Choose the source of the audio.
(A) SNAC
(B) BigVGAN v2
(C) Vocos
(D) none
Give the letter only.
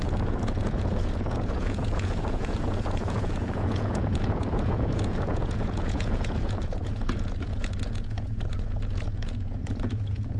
C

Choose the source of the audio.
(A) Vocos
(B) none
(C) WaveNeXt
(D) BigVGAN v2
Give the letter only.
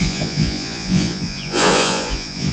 A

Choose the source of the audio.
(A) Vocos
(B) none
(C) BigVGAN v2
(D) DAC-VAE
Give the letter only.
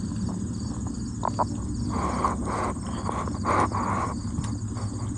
B